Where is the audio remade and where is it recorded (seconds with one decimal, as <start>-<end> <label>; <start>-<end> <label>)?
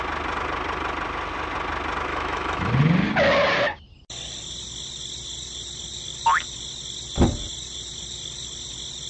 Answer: 0.0-2.1 recorded; 2.1-2.7 remade; 2.7-9.1 recorded